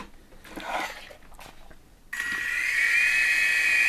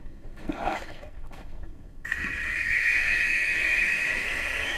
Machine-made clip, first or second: second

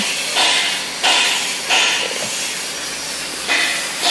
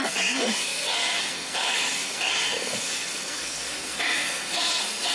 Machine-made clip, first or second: second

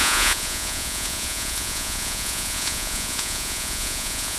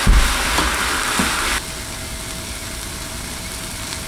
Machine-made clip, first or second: first